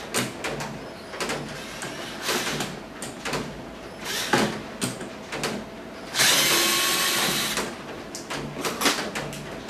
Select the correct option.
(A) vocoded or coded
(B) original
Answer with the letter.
B